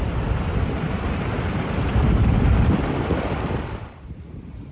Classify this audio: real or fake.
fake